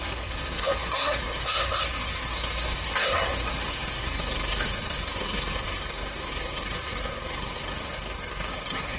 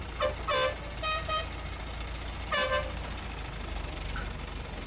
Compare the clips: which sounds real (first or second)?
second